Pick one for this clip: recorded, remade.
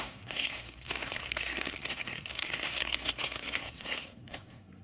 remade